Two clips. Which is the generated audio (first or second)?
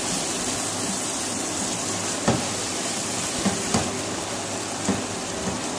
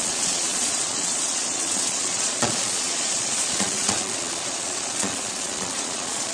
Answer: second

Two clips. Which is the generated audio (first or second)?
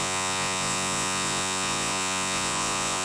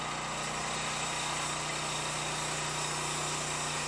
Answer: first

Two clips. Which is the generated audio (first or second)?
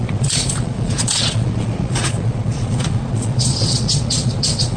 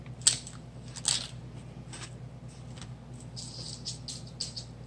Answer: first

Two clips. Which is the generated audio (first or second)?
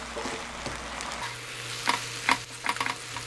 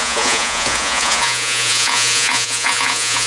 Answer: second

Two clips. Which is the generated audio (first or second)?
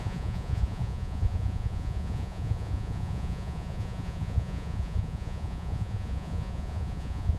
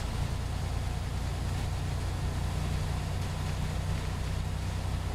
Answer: first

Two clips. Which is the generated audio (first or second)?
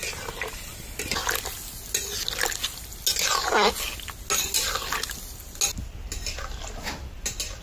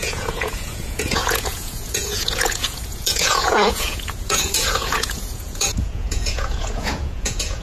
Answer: second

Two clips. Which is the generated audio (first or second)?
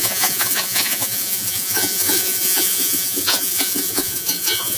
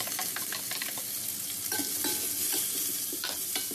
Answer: first